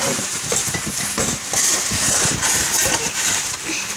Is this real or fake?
fake